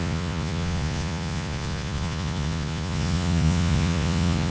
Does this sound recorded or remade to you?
remade